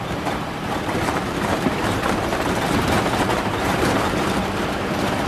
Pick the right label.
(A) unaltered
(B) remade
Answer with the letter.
B